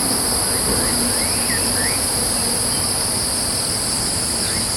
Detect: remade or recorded recorded